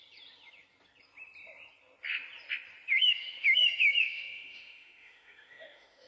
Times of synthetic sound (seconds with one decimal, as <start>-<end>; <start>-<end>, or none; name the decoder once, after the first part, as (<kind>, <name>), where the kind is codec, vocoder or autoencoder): 3.0-6.1 (autoencoder, DAC-VAE)